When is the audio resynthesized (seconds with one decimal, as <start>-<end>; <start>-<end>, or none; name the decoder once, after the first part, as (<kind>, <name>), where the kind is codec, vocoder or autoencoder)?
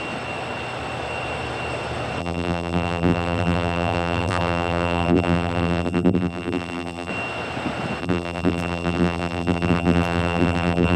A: 2.2-7.1 (vocoder, BigVGAN v2); 8.0-11.0